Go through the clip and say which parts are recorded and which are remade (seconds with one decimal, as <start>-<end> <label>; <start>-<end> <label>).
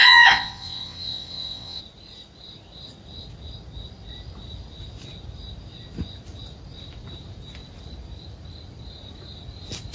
0.0-1.8 remade; 1.8-9.9 recorded